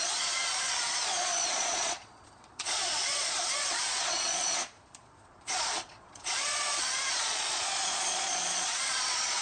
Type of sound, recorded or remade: remade